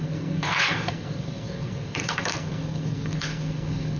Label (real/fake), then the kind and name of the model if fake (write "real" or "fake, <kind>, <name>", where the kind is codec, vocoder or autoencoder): fake, codec, SNAC